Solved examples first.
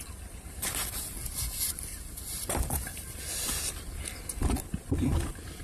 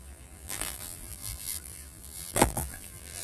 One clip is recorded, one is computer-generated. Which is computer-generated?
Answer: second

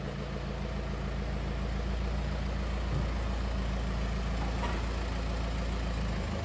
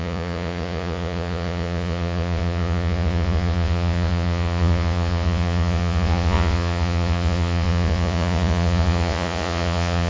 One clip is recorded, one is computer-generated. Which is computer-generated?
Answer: second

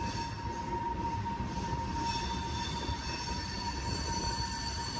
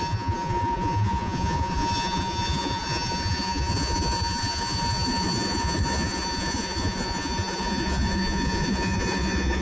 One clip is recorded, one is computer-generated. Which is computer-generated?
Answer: second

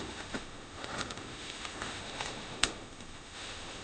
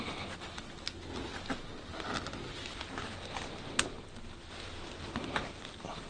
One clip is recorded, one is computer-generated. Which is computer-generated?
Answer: first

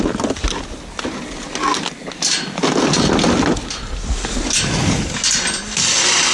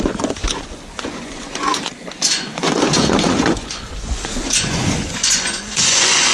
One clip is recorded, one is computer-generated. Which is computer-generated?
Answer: second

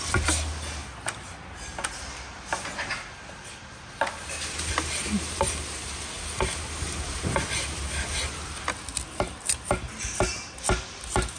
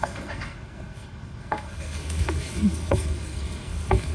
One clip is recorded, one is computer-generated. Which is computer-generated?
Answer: second